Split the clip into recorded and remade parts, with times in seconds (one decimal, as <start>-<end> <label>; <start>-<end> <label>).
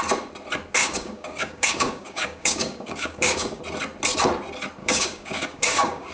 0.0-0.8 recorded; 0.8-3.6 remade; 3.6-4.8 recorded; 4.8-6.1 remade